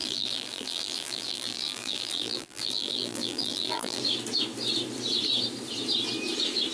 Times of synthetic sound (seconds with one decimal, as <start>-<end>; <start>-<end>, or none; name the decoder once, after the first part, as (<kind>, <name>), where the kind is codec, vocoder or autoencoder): 0.0-4.0 (vocoder, BigVGAN v2)